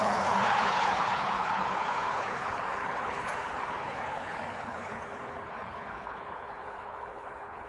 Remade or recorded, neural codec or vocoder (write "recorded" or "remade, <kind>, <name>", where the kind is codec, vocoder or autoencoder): remade, codec, HILCodec